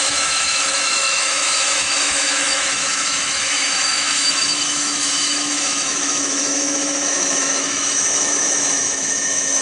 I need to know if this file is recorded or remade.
remade